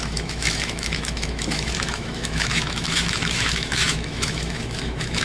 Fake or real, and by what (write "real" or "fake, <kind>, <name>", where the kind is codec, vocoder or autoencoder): fake, autoencoder, DAC-VAE